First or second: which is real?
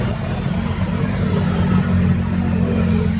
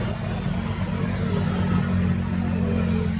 second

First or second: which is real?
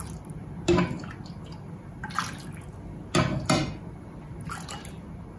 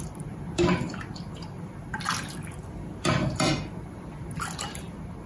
first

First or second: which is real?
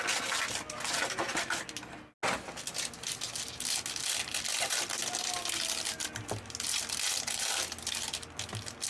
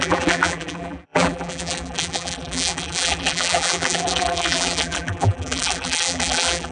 first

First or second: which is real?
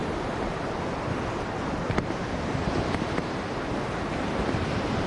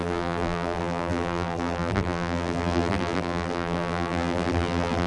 first